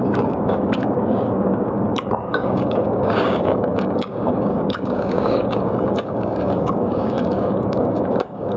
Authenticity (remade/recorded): remade